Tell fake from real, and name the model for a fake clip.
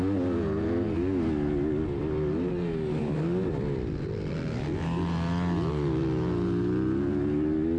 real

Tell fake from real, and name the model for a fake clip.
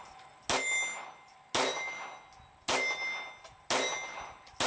real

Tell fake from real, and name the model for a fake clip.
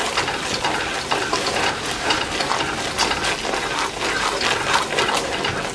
real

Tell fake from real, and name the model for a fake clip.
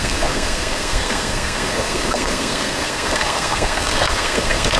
fake, codec, SNAC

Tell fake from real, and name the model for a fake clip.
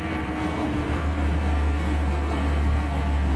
fake, codec, SNAC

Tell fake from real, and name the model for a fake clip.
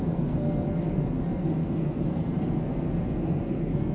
fake, codec, SNAC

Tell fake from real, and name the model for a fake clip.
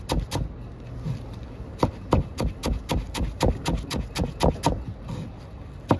real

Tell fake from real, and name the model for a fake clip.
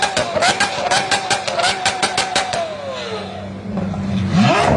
real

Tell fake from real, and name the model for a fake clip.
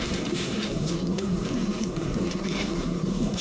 fake, codec, SNAC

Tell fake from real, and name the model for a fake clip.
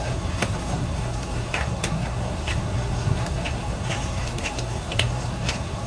fake, codec, SNAC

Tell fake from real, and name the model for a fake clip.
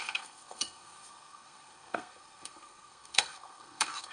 fake, codec, SNAC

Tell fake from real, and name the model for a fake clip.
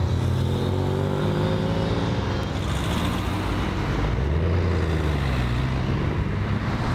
real